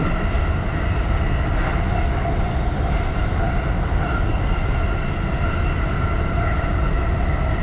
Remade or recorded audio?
recorded